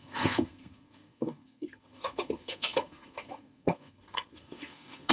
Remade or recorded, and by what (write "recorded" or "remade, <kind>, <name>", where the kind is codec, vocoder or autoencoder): remade, codec, SNAC